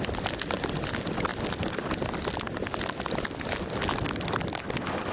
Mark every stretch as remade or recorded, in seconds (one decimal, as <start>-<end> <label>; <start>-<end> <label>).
0.0-5.1 recorded